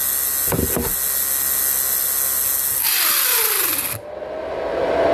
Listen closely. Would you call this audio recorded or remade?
recorded